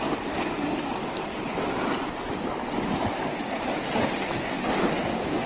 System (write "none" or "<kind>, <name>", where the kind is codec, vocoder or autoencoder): none